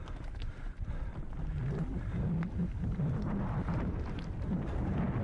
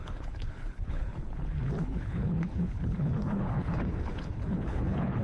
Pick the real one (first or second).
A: first